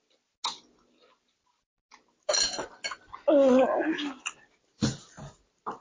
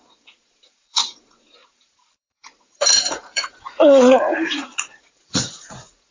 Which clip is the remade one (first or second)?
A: second